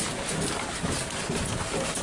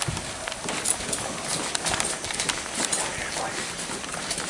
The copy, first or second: first